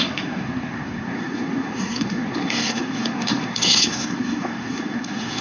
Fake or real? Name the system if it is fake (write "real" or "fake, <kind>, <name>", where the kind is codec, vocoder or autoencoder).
fake, codec, SNAC